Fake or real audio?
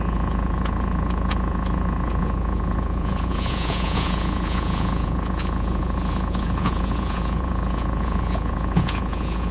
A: fake